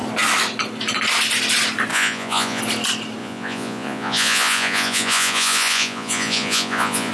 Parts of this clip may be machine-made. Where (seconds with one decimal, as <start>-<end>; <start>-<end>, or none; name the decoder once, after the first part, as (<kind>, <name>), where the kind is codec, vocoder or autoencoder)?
1.9-2.6 (vocoder, Vocos); 3.2-7.1